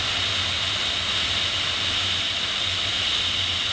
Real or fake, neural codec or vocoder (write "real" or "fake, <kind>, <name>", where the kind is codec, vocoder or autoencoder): real